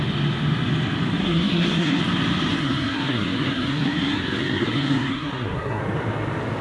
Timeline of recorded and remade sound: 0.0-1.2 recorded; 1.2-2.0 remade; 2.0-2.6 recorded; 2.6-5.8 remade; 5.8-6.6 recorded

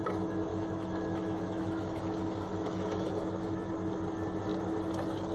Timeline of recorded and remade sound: 0.0-0.5 recorded; 0.5-3.7 remade; 3.7-5.3 recorded